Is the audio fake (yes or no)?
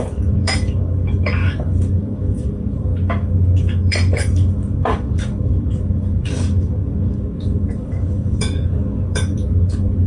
yes